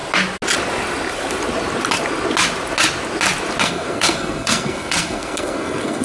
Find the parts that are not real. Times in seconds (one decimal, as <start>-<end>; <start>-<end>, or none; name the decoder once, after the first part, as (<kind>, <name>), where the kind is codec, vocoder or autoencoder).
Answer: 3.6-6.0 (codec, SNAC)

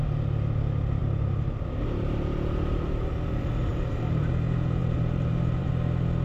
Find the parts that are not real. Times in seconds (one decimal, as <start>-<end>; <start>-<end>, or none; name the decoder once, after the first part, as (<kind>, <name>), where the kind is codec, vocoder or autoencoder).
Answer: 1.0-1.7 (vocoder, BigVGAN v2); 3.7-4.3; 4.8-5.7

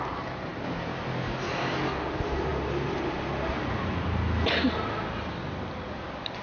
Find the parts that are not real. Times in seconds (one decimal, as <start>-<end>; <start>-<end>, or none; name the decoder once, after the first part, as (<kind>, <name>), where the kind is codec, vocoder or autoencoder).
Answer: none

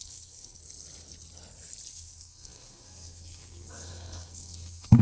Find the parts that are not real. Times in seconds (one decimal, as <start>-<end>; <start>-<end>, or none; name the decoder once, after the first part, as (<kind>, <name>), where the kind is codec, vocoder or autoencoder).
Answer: 0.0-0.6 (codec, SNAC); 1.9-5.0

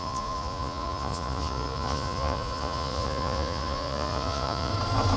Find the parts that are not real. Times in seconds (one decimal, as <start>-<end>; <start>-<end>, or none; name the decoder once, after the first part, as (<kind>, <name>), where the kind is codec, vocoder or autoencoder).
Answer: 0.0-4.7 (vocoder, Vocos)

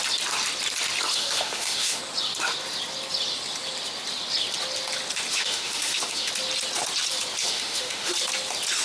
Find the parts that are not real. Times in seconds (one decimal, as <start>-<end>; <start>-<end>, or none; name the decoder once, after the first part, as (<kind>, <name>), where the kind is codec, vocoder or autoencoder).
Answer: 1.1-2.0 (autoencoder, DAC-VAE); 5.3-6.3; 7.4-8.1